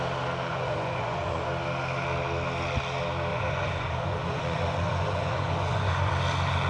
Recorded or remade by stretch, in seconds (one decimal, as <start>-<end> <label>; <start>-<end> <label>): 0.0-0.5 recorded; 0.5-1.5 remade; 1.5-3.3 recorded; 3.3-6.1 remade; 6.1-6.7 recorded